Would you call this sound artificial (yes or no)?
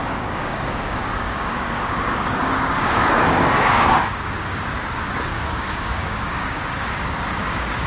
yes